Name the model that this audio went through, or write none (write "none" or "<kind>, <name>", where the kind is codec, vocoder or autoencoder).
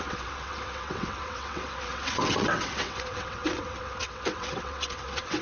vocoder, WaveNeXt